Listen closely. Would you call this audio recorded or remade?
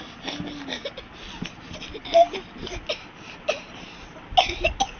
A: recorded